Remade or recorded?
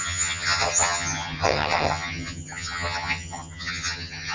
remade